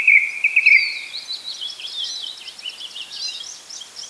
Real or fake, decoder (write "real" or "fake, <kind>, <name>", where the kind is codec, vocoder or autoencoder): real